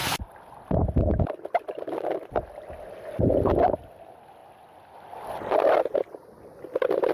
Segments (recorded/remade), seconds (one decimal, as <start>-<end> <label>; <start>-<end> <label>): 0.0-7.1 recorded